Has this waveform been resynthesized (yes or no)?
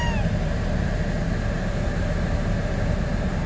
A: no